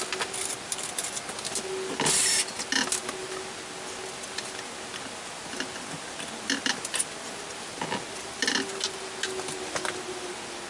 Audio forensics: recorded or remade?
recorded